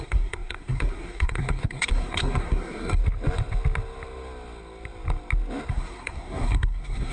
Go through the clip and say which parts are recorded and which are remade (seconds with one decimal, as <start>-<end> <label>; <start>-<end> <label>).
0.0-3.0 remade; 3.0-5.7 recorded; 5.7-7.1 remade